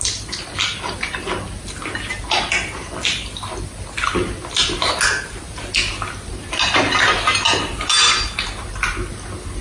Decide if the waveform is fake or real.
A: real